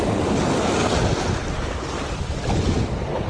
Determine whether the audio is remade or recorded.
recorded